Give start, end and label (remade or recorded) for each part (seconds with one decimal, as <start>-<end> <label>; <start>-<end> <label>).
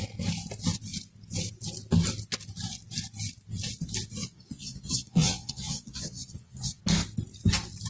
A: 0.0-4.2 recorded; 4.2-6.8 remade; 6.8-7.9 recorded